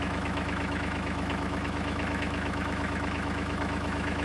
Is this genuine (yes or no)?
no